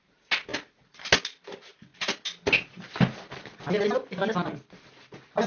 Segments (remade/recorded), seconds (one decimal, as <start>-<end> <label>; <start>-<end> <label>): 0.0-5.5 recorded